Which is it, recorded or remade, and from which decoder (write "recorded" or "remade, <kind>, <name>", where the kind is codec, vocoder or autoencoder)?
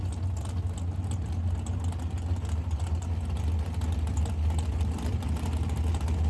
recorded